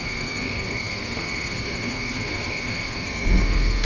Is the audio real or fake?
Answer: fake